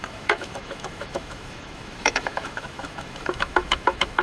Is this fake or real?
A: fake